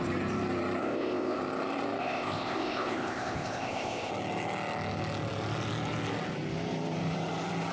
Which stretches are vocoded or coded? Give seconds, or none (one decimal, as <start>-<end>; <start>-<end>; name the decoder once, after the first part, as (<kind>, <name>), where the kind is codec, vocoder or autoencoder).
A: 0.8-1.4 (codec, ZipCodec); 2.0-4.1